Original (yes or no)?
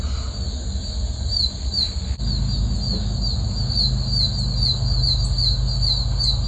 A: yes